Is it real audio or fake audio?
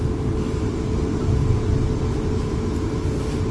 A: real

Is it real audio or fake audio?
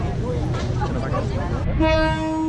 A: real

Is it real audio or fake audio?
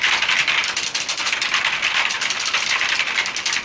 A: real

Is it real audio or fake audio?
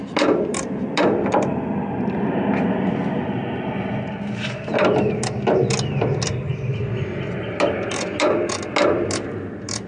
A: real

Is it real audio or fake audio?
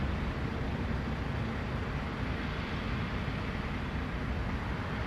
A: real